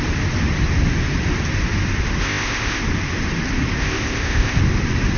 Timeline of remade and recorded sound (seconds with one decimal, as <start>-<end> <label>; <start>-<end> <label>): 0.0-2.2 recorded; 2.2-2.8 remade; 2.8-3.8 recorded; 3.8-4.6 remade; 4.6-5.2 recorded